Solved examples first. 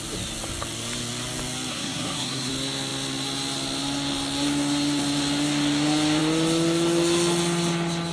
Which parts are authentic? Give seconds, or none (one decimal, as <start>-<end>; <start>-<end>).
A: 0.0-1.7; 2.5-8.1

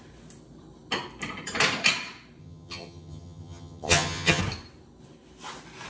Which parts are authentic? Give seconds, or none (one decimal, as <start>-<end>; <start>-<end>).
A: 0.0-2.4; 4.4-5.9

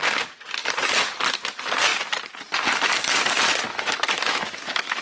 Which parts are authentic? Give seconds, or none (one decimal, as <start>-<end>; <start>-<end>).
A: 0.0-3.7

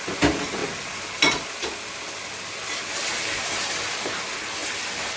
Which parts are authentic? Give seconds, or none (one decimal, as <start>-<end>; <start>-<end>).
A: 0.0-5.2